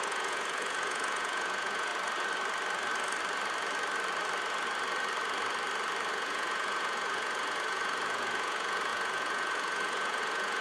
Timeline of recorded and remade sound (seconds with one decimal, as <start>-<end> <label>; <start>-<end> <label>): 0.0-1.9 remade; 1.9-6.1 recorded; 6.1-10.6 remade

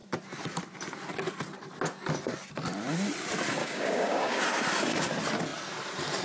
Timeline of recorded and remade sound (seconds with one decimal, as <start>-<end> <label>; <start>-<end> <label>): 0.0-3.6 recorded; 3.6-4.4 remade; 4.4-6.2 recorded

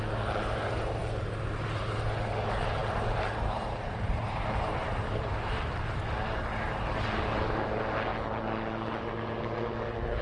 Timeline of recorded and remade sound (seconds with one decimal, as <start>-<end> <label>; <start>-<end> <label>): 0.0-2.8 recorded; 2.8-6.1 remade; 6.1-10.2 recorded

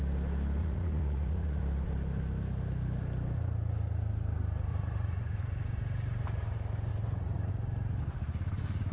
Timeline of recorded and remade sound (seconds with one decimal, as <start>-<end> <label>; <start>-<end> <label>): 0.0-0.6 recorded; 0.6-1.6 remade; 1.6-4.7 recorded; 4.7-5.4 remade; 5.4-6.9 recorded; 6.9-7.5 remade; 7.5-8.9 recorded

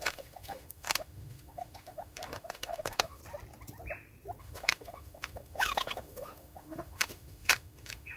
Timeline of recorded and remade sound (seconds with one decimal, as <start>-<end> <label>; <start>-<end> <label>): 0.0-3.2 remade; 3.2-4.4 recorded; 4.4-8.2 remade

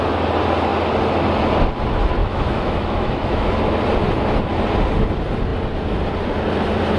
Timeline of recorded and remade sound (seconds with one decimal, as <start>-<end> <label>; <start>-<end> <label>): 0.0-2.2 recorded; 2.2-3.5 remade; 3.5-7.0 recorded

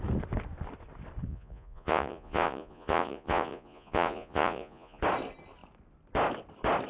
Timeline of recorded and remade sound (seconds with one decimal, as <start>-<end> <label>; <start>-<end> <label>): 0.0-1.3 recorded; 1.3-5.0 remade; 5.0-6.9 recorded

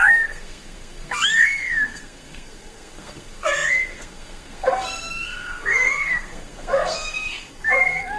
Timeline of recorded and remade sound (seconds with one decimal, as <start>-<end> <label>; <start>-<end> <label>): 0.0-8.2 remade